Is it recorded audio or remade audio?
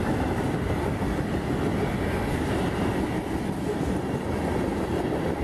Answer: recorded